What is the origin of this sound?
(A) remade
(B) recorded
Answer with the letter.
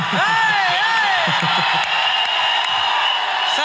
B